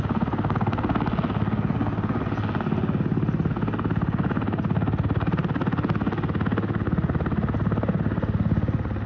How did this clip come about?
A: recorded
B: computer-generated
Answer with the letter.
A